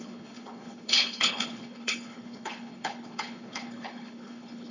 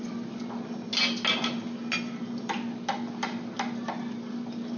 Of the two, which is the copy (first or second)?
first